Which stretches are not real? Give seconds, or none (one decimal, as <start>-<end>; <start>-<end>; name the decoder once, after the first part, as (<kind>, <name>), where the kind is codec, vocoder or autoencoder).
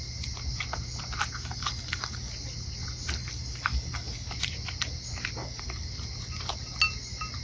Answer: 1.4-2.3 (codec, DAC); 3.2-4.3; 5.4-5.9